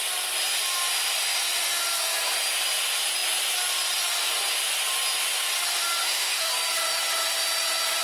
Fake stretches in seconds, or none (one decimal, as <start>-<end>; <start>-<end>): 6.0-6.5